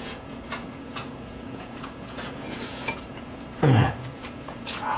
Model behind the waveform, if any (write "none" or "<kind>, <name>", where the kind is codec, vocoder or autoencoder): vocoder, Vocos